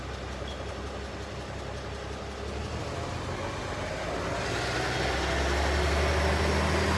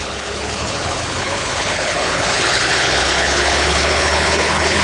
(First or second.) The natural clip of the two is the first